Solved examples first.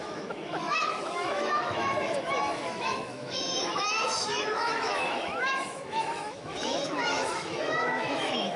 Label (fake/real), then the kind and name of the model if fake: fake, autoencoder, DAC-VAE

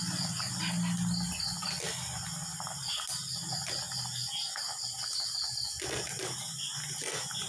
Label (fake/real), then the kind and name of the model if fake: real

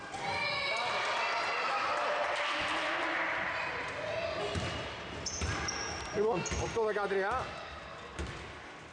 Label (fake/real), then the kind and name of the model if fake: real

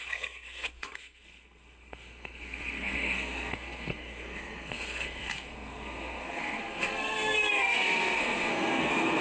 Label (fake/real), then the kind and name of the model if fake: fake, codec, SNAC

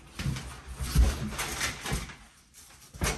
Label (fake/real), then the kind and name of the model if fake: real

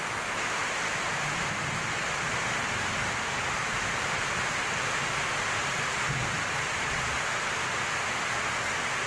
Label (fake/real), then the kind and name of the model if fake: real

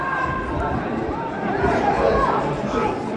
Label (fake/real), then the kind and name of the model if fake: fake, vocoder, BigVGAN v2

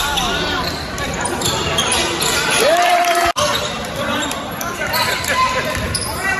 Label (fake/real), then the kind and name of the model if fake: fake, vocoder, BigVGAN v2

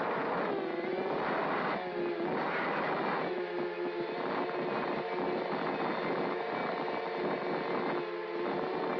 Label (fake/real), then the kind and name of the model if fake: real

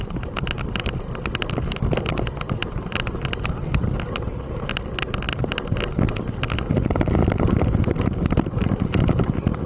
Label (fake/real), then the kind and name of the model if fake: real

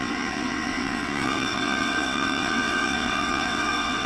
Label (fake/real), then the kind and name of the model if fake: fake, vocoder, WaveNeXt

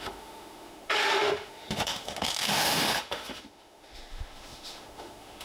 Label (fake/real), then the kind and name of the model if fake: fake, autoencoder, DAC-VAE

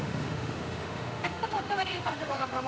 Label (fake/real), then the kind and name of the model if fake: fake, autoencoder, DAC-VAE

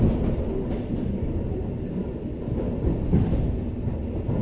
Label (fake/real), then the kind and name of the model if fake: real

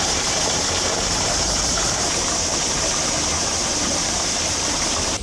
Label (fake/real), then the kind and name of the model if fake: fake, vocoder, BigVGAN v2